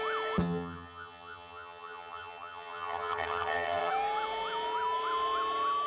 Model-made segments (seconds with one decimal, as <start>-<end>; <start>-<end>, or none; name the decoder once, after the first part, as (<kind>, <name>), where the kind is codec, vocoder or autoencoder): 0.4-3.9 (vocoder, HiFi-GAN)